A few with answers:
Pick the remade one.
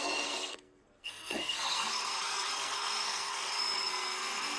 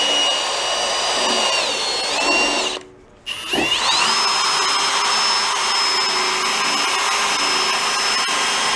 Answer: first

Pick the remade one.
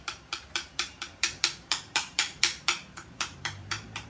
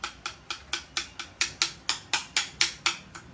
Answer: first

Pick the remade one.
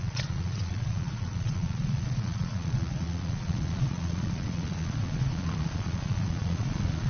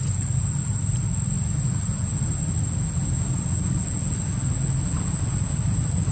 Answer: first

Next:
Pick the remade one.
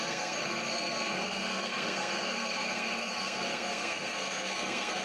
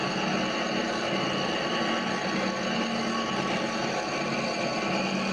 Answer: first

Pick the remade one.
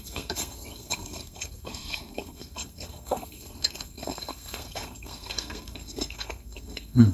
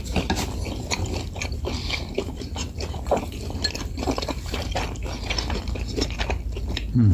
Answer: first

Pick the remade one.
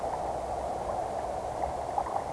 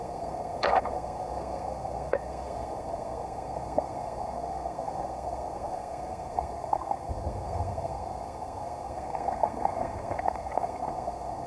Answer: second